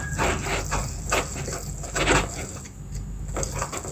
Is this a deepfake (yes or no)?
no